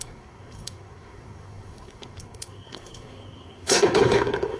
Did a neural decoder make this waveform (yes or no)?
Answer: yes